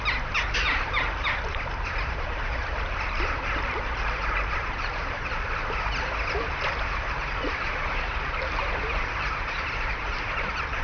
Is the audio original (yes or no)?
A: yes